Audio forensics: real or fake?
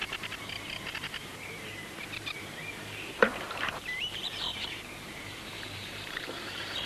fake